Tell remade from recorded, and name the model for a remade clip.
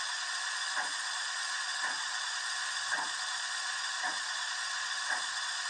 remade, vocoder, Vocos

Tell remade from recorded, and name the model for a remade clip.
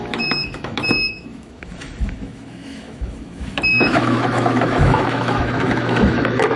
remade, autoencoder, DAC-VAE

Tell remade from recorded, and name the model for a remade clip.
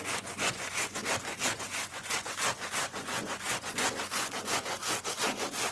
remade, vocoder, Vocos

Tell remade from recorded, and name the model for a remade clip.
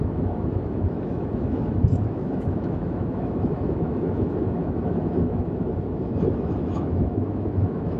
remade, autoencoder, DAC-VAE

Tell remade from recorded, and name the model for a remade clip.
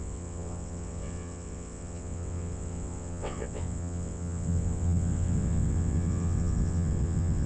remade, vocoder, WaveNeXt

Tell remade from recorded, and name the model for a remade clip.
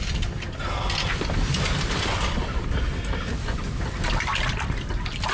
recorded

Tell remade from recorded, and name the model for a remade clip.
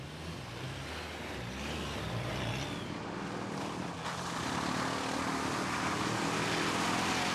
recorded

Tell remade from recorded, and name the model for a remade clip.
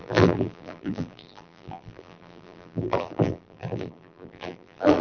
remade, vocoder, BigVGAN v2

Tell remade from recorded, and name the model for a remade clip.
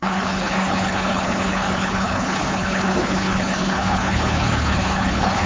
remade, codec, HILCodec